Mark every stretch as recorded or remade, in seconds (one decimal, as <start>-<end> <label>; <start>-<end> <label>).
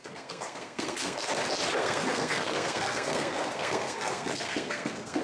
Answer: 0.0-1.3 remade; 1.3-1.8 recorded; 1.8-5.2 remade